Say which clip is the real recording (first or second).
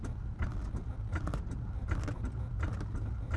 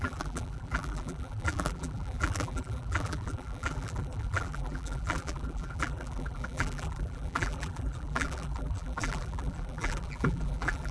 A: first